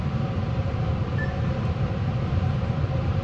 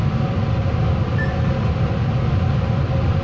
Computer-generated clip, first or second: first